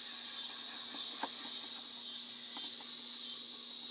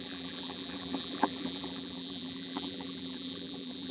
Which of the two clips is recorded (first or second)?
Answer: first